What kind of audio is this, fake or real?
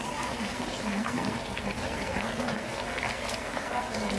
fake